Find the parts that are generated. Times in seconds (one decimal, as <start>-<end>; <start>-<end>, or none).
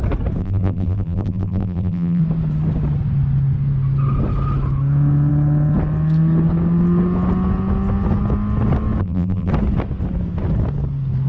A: 0.4-2.2; 9.0-9.5